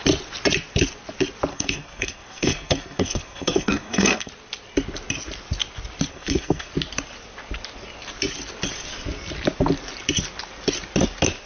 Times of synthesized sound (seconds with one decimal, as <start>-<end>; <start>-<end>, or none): 1.5-4.3; 6.1-6.7